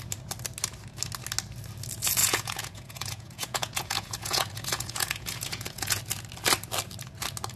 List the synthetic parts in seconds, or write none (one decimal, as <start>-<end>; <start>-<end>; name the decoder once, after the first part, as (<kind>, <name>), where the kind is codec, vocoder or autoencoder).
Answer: 2.2-6.0 (vocoder, Vocos)